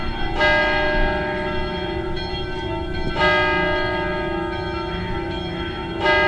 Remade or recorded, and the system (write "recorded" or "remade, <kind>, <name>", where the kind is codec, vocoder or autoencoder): recorded